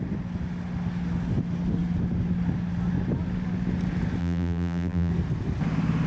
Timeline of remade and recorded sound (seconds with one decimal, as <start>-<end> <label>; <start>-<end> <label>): 0.0-4.2 recorded; 4.2-5.1 remade; 5.1-6.1 recorded